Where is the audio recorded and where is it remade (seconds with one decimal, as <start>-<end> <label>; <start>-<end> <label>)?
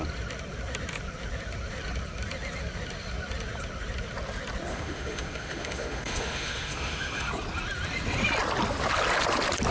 0.0-4.7 recorded; 4.7-7.3 remade; 7.3-9.7 recorded